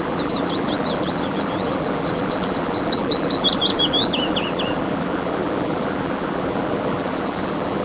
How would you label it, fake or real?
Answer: fake